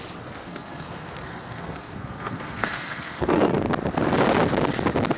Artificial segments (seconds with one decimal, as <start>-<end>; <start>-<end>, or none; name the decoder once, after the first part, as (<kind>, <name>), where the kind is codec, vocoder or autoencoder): 0.4-3.5 (codec, SNAC)